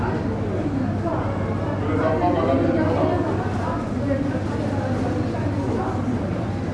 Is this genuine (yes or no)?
yes